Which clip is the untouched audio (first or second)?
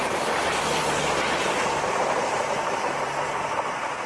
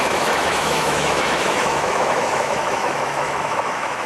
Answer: first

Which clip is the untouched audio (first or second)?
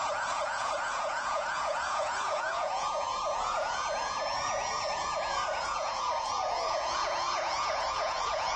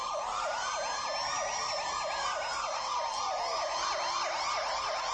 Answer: second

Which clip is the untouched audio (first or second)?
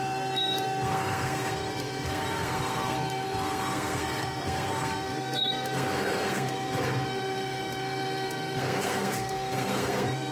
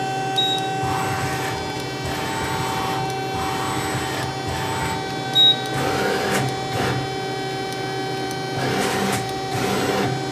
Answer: second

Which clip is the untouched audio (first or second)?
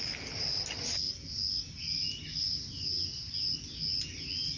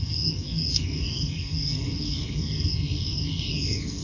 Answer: first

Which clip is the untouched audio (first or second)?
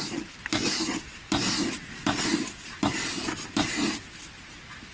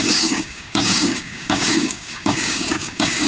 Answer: first